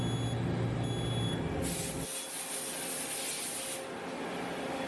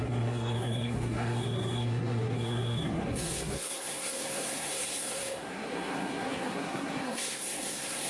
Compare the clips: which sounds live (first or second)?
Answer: first